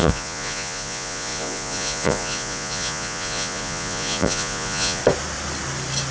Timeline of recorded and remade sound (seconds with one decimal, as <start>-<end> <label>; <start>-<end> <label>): 0.0-5.0 remade; 5.0-6.1 recorded